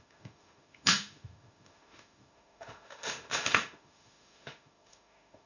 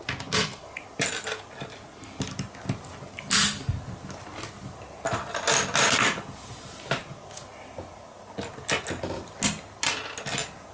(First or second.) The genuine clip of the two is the second